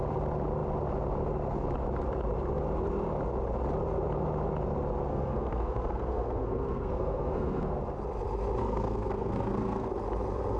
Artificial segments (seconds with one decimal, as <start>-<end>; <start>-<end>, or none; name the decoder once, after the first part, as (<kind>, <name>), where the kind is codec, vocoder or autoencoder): 5.1-7.8 (codec, SNAC); 8.6-9.9